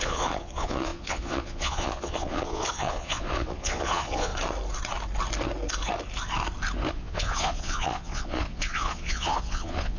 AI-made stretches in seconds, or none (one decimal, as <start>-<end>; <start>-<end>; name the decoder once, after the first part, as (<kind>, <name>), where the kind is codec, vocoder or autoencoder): 0.0-4.3 (vocoder, Vocos); 6.9-10.0